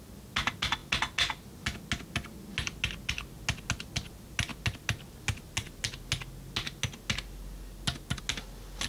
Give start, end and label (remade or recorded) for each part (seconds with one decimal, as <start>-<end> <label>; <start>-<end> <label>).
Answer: 0.0-8.9 recorded